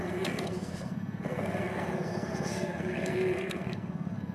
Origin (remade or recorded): remade